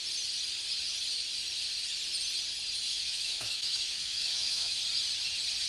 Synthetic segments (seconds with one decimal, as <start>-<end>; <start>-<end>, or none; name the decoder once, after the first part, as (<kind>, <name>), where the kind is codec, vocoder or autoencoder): 2.9-4.8 (autoencoder, DAC-VAE)